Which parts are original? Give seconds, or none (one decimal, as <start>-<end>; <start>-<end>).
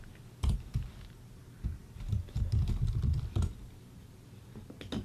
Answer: 0.0-5.0